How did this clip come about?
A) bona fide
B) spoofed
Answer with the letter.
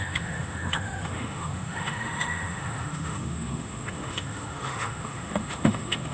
B